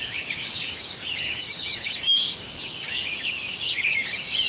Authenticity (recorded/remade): remade